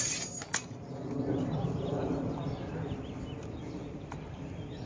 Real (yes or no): yes